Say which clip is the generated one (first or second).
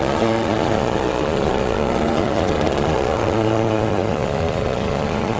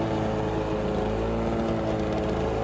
first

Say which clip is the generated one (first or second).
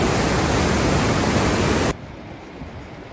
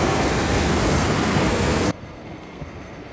second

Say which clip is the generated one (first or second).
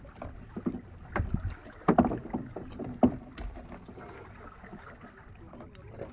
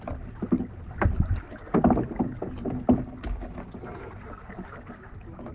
first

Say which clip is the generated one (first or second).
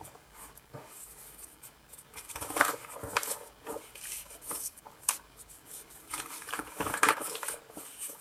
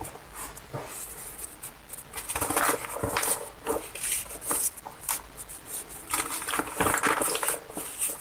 first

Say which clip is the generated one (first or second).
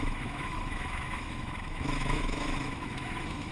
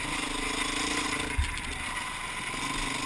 first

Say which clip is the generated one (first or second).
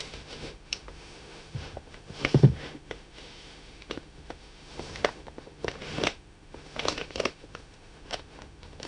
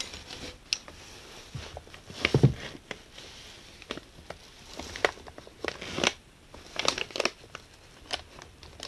first